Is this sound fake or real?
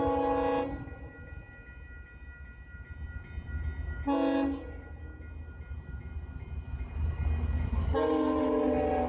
real